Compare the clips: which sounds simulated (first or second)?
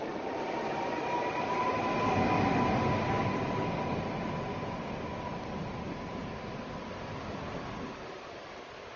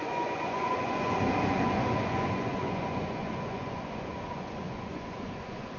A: second